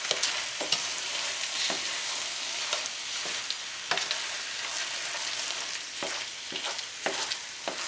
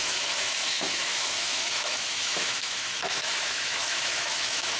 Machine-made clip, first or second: second